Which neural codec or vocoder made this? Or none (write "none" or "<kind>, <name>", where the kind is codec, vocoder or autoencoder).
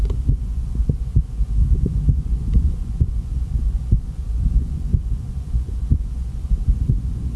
vocoder, Vocos